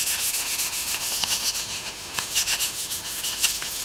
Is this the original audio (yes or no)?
no